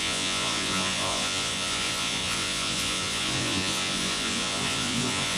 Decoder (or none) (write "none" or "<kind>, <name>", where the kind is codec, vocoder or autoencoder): vocoder, Vocos